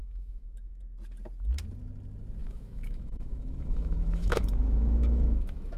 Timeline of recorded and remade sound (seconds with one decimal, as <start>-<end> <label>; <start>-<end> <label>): 0.0-0.8 remade; 0.8-2.4 recorded; 2.4-5.8 remade